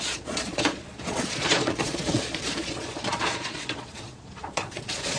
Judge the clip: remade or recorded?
remade